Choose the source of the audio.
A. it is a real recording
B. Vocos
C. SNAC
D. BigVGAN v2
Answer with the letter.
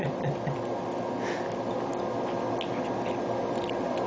A